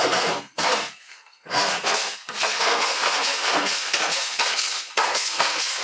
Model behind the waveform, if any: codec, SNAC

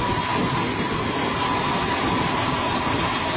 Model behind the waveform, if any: none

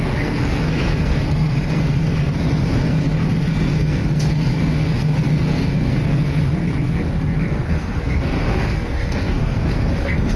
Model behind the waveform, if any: codec, SNAC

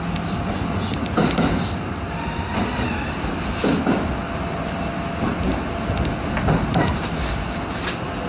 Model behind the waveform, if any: none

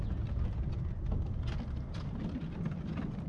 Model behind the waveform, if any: none